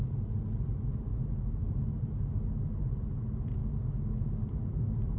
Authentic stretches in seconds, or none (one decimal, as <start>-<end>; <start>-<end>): 0.0-5.2